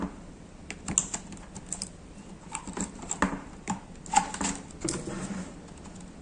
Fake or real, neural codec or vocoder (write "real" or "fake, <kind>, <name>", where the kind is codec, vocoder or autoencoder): real